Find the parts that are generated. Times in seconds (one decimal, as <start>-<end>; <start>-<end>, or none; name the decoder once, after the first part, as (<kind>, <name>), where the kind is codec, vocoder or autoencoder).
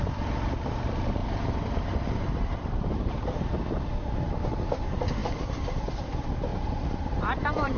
1.2-3.1 (vocoder, BigVGAN v2); 5.2-5.8; 6.5-7.8